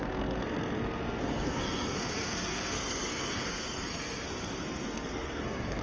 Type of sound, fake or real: fake